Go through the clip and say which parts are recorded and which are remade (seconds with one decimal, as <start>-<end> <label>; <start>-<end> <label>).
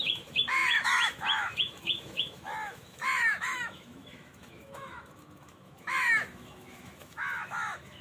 0.0-8.0 remade